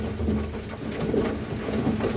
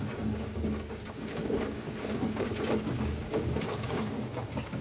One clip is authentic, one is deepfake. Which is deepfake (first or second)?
second